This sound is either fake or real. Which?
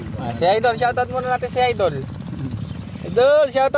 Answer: real